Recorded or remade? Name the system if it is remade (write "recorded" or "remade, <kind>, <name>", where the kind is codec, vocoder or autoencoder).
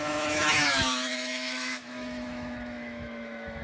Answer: remade, autoencoder, DAC-VAE